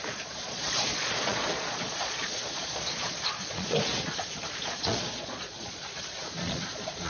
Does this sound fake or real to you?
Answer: fake